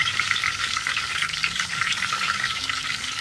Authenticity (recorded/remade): remade